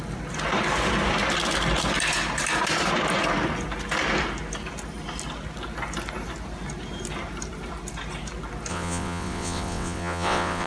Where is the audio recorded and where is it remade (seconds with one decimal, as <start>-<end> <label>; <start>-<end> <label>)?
0.0-8.7 recorded; 8.7-10.7 remade